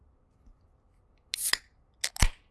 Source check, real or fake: real